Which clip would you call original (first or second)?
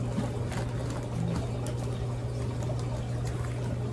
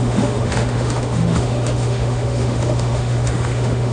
first